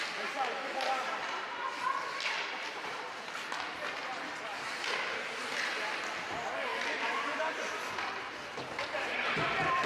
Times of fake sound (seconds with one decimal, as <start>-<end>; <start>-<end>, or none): 6.7-7.8

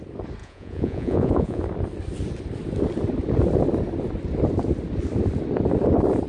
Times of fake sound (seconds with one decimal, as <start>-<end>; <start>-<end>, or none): 0.4-1.6

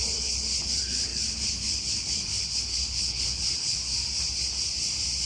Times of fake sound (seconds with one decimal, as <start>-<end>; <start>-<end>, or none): 0.0-3.8

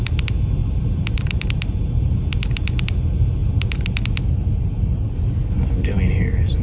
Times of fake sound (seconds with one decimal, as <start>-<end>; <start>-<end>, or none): 0.6-2.2; 3.4-4.0

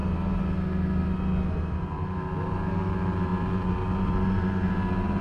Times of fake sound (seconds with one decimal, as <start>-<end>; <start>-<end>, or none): 1.5-5.2

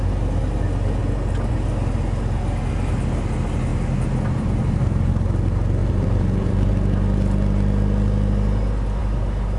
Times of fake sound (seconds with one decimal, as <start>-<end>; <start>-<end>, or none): 3.7-5.1; 5.8-6.7